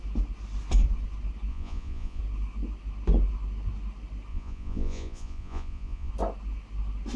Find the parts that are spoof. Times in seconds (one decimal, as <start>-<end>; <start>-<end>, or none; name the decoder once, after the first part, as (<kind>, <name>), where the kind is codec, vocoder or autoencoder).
1.5-2.2 (vocoder, Vocos); 4.3-6.1

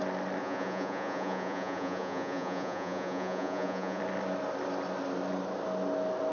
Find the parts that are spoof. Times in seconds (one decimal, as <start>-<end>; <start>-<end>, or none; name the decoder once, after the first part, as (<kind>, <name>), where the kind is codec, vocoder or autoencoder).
0.4-4.0 (vocoder, Vocos)

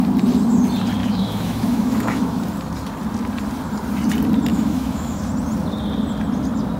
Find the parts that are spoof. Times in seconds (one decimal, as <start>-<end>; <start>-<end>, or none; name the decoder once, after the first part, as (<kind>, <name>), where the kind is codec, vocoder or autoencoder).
1.0-2.4 (autoencoder, DAC-VAE); 4.5-5.2

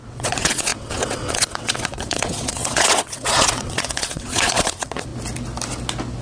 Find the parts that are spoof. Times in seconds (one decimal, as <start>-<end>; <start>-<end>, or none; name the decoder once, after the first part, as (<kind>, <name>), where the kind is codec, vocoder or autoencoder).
0.0-5.1 (vocoder, WaveNeXt)

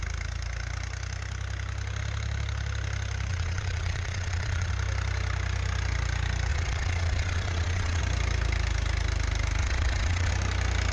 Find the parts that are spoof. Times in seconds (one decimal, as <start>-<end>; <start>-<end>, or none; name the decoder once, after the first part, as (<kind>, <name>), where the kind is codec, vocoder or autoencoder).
3.3-4.7 (vocoder, Vocos); 6.5-8.0; 9.6-10.3

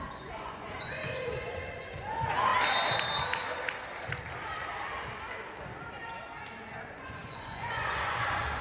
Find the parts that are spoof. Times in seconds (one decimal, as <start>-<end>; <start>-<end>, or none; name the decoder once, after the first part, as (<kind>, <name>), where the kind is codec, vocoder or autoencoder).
0.0-2.5 (vocoder, Vocos); 6.6-8.6

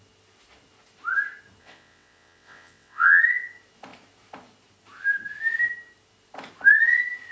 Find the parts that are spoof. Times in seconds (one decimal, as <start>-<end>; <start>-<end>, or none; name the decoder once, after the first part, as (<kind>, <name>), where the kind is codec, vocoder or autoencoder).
1.6-3.2 (vocoder, WaveNeXt)